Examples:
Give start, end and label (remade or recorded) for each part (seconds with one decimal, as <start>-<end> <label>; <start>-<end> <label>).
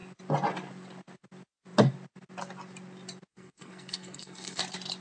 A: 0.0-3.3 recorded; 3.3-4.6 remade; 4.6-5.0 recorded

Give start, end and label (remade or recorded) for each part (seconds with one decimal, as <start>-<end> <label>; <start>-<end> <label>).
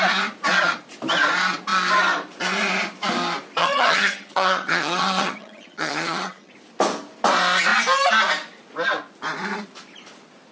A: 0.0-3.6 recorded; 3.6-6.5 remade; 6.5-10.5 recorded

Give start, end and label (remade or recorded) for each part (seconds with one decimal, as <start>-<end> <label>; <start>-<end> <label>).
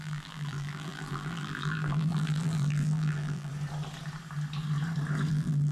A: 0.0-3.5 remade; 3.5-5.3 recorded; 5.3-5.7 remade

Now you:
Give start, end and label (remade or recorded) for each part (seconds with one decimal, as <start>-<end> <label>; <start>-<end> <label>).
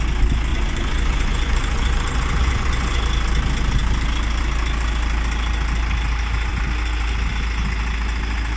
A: 0.0-0.5 recorded; 0.5-3.0 remade; 3.0-8.6 recorded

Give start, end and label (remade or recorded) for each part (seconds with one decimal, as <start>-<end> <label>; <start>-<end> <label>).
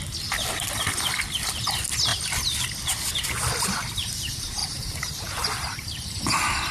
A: 0.0-4.6 recorded; 4.6-6.7 remade